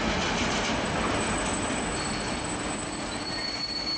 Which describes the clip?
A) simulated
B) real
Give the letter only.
A